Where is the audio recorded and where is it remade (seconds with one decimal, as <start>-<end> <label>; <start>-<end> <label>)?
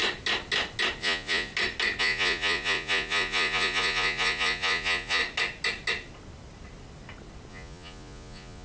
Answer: 0.0-1.0 recorded; 1.0-1.5 remade; 1.5-2.0 recorded; 2.0-5.2 remade; 5.2-7.5 recorded; 7.5-8.6 remade